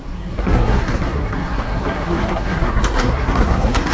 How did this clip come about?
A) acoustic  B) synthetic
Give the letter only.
B